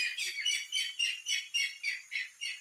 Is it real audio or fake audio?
real